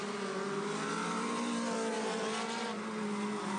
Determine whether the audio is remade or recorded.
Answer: recorded